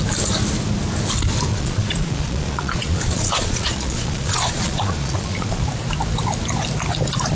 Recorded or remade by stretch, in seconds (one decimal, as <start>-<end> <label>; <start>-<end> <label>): 0.0-1.5 recorded; 1.5-5.6 remade; 5.6-7.3 recorded